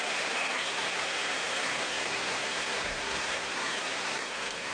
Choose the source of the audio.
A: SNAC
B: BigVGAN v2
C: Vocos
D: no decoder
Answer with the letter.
A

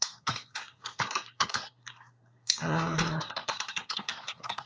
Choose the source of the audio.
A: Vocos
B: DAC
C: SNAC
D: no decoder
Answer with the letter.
C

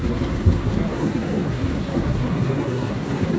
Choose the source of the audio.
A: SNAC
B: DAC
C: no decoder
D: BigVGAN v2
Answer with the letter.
A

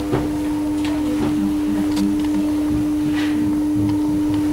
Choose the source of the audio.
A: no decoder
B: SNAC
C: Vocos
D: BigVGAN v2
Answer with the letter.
A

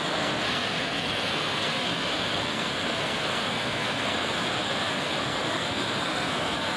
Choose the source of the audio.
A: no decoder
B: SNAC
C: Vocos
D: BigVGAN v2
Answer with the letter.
B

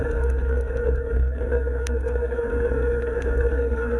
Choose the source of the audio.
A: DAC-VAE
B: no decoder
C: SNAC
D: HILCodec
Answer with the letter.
C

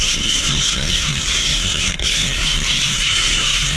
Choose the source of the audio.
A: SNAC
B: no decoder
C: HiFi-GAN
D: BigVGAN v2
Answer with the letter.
A